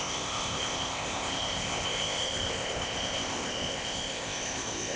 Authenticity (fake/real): fake